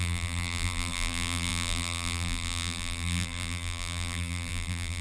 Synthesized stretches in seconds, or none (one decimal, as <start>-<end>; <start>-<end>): 0.0-5.0